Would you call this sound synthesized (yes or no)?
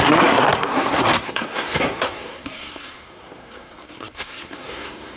yes